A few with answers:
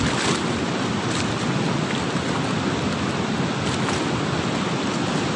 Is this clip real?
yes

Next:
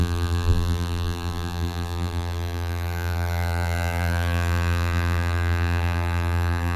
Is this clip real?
no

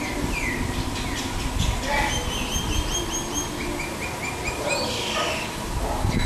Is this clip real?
yes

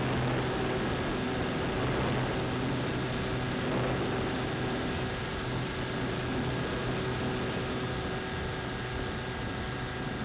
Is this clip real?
yes